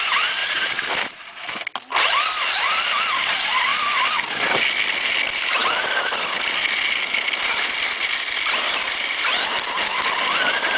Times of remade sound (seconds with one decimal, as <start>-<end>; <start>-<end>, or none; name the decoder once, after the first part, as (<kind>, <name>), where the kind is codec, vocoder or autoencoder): 0.4-1.5 (vocoder, BigVGAN v2)